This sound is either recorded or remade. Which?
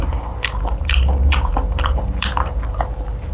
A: remade